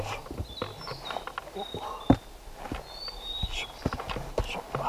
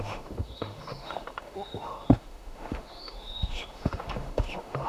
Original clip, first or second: first